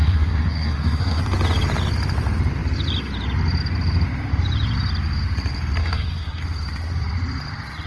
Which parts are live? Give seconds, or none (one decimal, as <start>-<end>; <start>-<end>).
1.2-5.8; 6.4-7.9